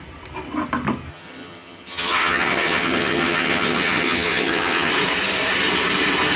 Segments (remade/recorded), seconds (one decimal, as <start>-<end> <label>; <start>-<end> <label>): 0.0-1.1 recorded; 1.1-4.9 remade; 4.9-6.4 recorded

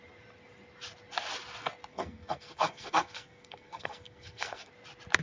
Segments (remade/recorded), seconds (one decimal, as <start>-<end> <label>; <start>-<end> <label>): 0.0-1.9 recorded; 1.9-4.7 remade; 4.7-5.2 recorded